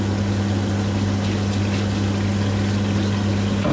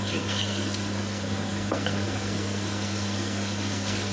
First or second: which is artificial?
second